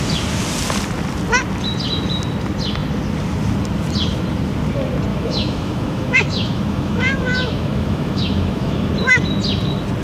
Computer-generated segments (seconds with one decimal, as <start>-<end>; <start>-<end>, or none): 5.1-8.9